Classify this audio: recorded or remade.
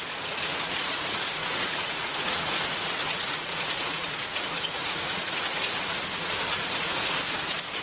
remade